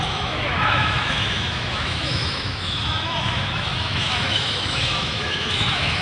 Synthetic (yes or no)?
yes